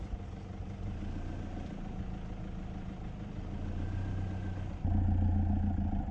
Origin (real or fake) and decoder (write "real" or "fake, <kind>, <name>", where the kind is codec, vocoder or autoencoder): real